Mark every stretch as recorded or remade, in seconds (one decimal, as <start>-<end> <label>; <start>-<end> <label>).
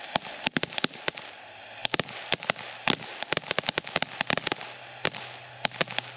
0.0-6.2 recorded